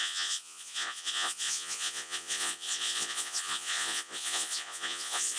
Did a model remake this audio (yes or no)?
yes